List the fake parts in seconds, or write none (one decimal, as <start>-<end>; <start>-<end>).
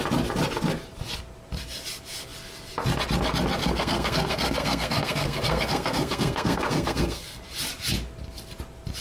3.6-7.4